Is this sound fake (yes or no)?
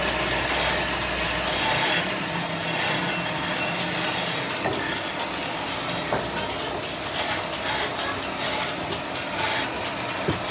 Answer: no